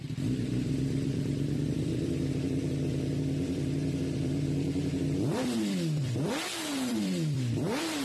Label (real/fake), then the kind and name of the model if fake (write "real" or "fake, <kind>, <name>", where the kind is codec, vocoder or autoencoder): fake, vocoder, BigVGAN v2